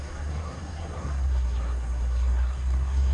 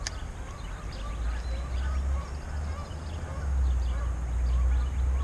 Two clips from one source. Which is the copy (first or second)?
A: first